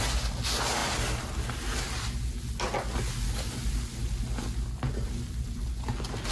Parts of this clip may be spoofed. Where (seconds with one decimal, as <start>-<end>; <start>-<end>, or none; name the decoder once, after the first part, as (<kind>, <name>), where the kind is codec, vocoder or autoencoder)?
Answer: 0.8-1.4 (vocoder, BigVGAN v2)